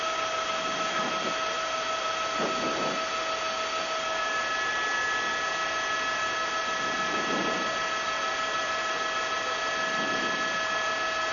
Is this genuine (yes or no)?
yes